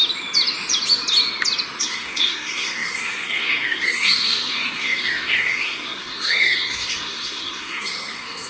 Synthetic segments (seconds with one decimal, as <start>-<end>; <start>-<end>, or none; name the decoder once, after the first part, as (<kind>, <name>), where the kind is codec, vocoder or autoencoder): 1.8-8.5 (codec, SNAC)